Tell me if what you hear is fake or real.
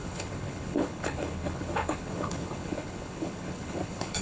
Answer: fake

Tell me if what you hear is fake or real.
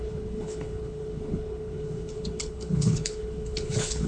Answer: fake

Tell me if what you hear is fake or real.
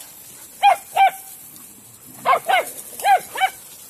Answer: real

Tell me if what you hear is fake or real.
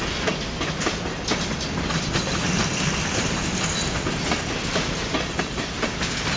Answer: real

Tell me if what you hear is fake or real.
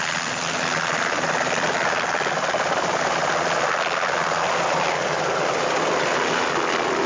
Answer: real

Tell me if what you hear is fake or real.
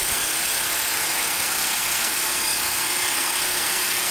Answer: fake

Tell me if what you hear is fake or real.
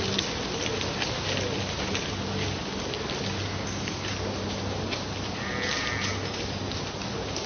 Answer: real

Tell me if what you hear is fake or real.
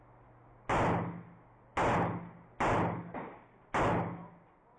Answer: real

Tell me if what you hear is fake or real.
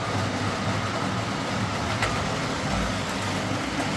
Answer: real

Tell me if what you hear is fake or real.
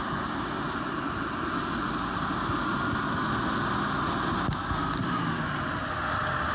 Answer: real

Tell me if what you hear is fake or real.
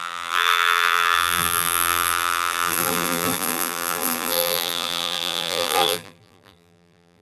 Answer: fake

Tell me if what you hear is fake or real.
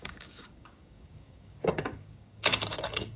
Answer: fake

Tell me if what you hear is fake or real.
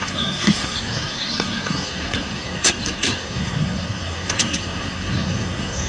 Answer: fake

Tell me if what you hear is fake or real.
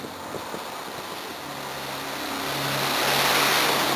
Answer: real